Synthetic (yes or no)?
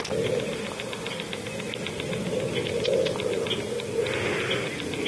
no